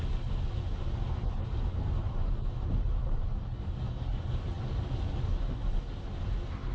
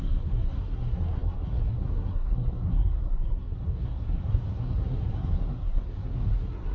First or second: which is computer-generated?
second